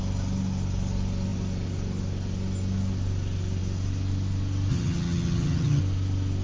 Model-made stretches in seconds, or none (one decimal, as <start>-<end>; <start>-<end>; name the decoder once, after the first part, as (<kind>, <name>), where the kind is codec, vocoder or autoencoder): 4.7-5.8 (vocoder, HiFi-GAN)